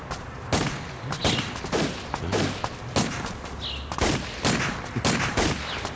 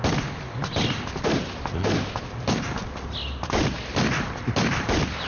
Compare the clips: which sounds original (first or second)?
first